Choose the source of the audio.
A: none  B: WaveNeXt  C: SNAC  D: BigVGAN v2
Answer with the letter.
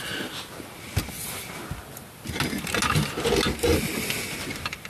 A